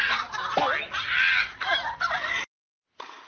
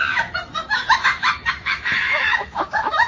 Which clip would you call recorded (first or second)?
first